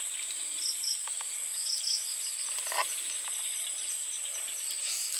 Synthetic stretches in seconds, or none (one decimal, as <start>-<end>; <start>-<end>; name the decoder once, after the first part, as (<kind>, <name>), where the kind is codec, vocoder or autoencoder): none